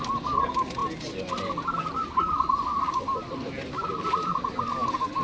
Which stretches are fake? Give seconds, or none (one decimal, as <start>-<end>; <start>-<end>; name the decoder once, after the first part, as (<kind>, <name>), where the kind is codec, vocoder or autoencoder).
none